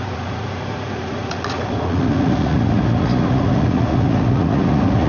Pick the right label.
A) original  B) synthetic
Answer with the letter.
B